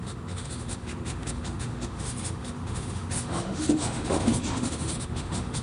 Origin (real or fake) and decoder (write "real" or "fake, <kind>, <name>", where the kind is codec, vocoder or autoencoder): fake, autoencoder, DAC-VAE